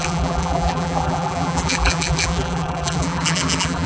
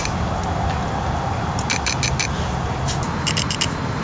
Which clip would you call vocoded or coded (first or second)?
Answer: first